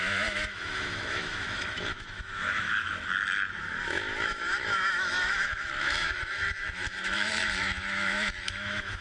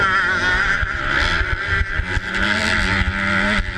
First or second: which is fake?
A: first